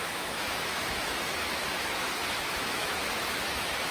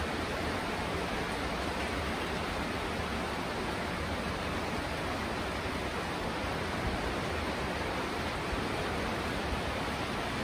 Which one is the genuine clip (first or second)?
second